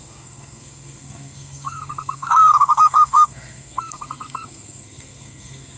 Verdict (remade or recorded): remade